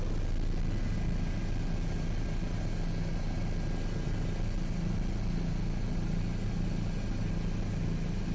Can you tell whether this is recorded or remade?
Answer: recorded